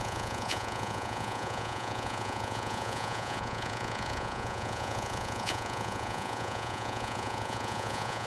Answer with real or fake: fake